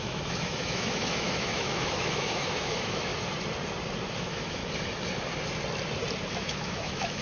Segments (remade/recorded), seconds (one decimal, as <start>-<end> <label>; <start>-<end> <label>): 0.0-3.1 remade; 3.1-4.1 recorded; 4.1-4.6 remade; 4.6-6.3 recorded; 6.3-7.2 remade